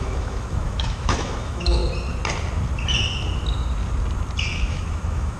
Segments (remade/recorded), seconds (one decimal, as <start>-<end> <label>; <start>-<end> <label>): 0.0-1.8 remade; 1.8-4.4 recorded; 4.4-5.4 remade